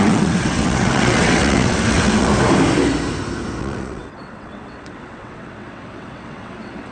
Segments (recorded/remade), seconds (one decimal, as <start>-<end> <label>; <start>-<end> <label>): 0.0-2.3 remade; 2.3-3.6 recorded; 3.6-6.9 remade